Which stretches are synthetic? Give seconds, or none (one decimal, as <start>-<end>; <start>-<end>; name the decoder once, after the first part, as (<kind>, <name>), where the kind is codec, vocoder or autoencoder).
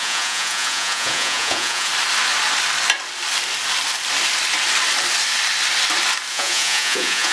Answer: 0.0-1.9 (vocoder, Vocos); 6.3-7.3